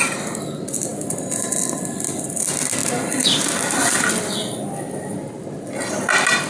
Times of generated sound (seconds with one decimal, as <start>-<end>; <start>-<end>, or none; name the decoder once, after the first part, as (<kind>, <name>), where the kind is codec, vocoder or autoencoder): none